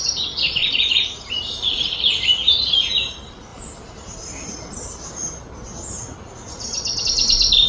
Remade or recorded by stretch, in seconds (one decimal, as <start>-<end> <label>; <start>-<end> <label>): 0.0-0.6 recorded; 0.6-1.3 remade; 1.3-7.7 recorded